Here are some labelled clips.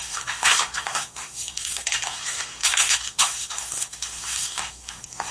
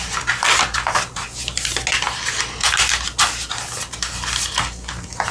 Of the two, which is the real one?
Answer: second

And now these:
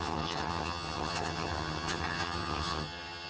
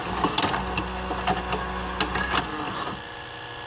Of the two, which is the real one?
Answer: second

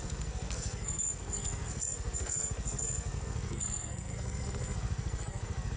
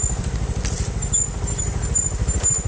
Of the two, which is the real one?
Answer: second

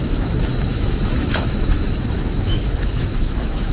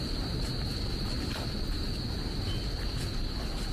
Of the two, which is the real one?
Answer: second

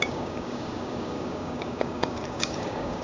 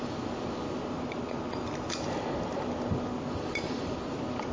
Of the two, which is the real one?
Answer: second